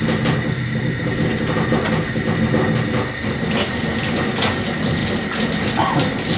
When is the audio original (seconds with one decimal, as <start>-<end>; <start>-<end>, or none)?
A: 0.0-6.4